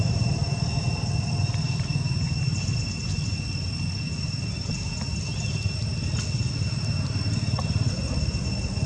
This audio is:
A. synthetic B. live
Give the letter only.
B